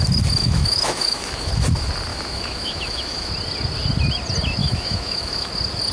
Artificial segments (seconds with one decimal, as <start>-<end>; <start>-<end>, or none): 0.4-1.5; 2.1-3.3; 4.6-5.5